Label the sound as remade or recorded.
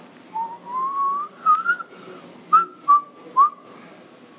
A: recorded